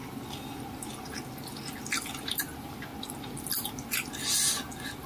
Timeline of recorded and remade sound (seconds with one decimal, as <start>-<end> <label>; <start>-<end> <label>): 0.0-2.2 recorded; 2.2-2.9 remade; 2.9-5.1 recorded